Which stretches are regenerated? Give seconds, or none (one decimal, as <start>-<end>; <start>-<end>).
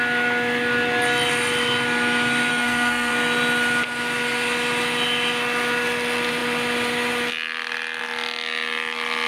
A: 2.5-3.1